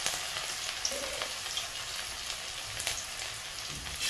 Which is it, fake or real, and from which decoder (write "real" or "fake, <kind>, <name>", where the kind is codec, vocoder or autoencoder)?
real